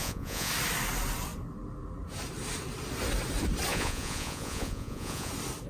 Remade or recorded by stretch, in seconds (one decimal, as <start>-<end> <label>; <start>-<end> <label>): 0.0-0.5 remade; 0.5-3.7 recorded; 3.7-5.3 remade; 5.3-5.7 recorded